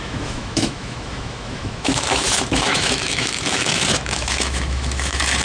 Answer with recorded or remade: remade